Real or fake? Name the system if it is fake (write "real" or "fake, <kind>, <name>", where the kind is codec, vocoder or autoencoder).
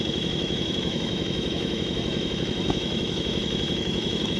fake, autoencoder, DAC-VAE